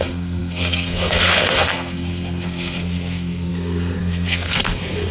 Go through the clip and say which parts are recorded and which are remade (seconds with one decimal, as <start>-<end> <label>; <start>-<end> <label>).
0.0-5.1 remade